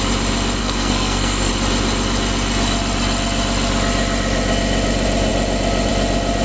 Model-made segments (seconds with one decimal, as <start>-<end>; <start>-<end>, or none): 0.6-1.5